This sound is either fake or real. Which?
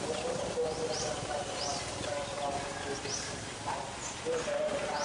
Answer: fake